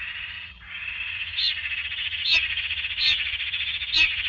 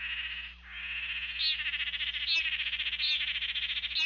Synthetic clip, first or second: first